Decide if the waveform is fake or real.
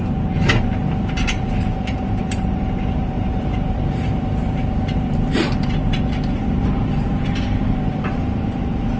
fake